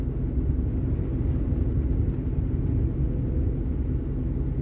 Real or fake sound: real